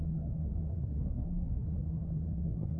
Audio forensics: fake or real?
fake